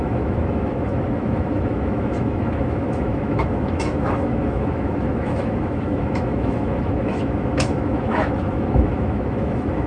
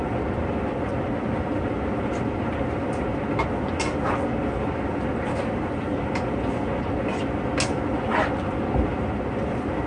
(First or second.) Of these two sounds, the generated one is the first